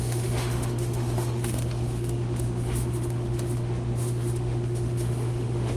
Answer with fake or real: fake